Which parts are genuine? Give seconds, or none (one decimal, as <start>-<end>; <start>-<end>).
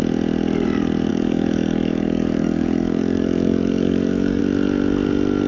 0.0-1.1; 4.4-5.5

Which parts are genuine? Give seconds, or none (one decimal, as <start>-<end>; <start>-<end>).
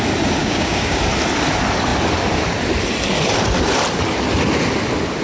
0.0-0.4; 1.0-5.2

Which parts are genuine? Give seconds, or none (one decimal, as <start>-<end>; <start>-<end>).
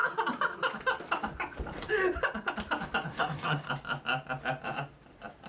0.0-3.1; 3.7-5.5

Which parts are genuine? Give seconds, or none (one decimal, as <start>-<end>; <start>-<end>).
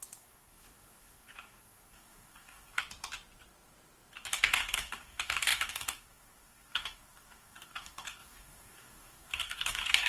2.8-4.3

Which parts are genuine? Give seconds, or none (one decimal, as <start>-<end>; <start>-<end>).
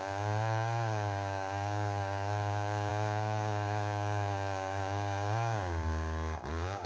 none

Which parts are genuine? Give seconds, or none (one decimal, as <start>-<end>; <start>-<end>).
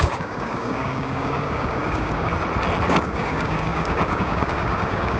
2.3-2.9